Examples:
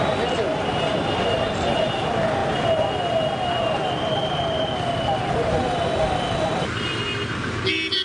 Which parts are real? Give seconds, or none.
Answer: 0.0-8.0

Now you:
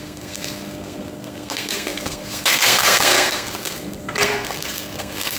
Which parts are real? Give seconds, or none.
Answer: none